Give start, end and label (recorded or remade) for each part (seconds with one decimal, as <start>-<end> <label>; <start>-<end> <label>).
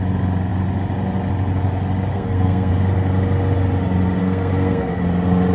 0.0-2.1 recorded; 2.1-2.7 remade; 2.7-4.2 recorded; 4.2-5.0 remade; 5.0-5.5 recorded